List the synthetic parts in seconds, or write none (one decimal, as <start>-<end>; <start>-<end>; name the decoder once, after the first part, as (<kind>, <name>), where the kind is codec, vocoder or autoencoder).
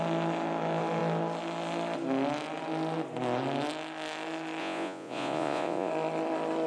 4.6-5.9 (vocoder, Vocos)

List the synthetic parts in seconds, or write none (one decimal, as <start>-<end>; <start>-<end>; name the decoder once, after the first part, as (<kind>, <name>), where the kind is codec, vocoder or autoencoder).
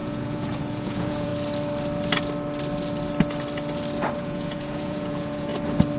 0.0-1.3 (vocoder, Vocos); 4.2-5.5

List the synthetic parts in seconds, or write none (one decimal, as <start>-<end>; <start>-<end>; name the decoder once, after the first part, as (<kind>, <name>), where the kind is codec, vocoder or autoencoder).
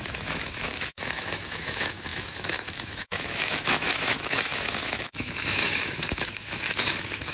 0.0-7.3 (autoencoder, DAC-VAE)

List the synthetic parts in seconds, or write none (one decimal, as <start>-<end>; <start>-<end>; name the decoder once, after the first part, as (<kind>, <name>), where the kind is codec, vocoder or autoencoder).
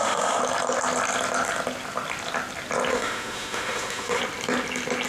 0.0-0.4 (autoencoder, DAC-VAE); 2.9-4.2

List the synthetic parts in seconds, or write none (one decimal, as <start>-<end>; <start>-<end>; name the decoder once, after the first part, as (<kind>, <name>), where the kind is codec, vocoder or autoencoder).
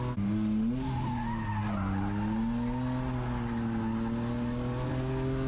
none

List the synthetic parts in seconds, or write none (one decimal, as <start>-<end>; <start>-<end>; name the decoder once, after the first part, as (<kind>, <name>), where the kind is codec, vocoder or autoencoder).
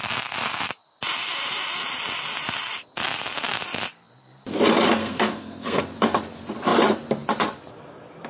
5.0-5.8 (codec, SNAC)